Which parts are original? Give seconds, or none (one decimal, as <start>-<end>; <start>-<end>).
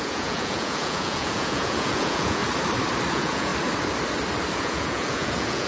2.4-3.1; 3.5-4.6